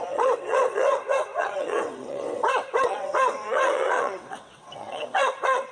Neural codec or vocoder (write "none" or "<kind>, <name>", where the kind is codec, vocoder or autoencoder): vocoder, WaveNeXt